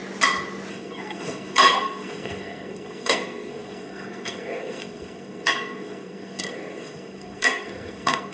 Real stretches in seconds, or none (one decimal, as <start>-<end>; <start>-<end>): 0.0-0.7